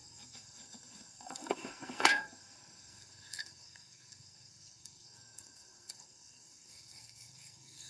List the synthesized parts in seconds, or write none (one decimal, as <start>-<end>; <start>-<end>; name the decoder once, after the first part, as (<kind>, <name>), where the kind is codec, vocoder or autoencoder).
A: 0.0-7.9 (codec, SNAC)